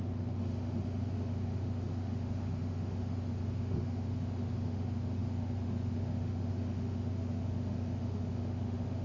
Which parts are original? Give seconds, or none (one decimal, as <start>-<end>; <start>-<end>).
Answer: none